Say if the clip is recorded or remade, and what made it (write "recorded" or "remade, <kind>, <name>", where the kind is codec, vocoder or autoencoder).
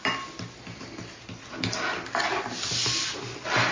recorded